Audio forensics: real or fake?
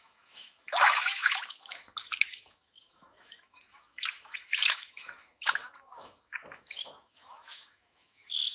fake